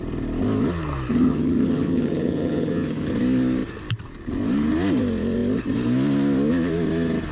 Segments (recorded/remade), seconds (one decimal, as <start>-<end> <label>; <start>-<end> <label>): 0.0-1.1 recorded; 1.1-3.1 remade; 3.1-7.3 recorded